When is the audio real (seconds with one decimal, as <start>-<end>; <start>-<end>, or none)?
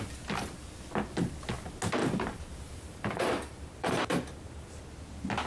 0.0-2.0; 4.8-5.5